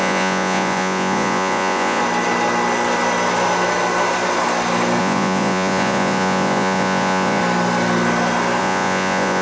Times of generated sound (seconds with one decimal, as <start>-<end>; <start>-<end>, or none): 0.0-2.0; 5.0-7.4; 8.6-9.4